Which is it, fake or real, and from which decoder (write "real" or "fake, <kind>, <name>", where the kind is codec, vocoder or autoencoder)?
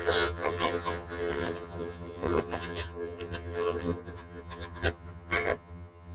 fake, vocoder, HiFi-GAN